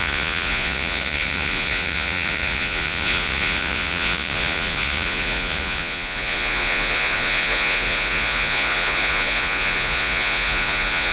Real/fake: fake